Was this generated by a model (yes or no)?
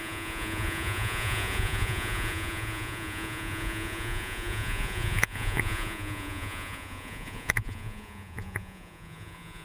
yes